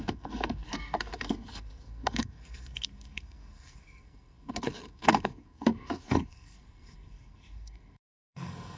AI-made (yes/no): yes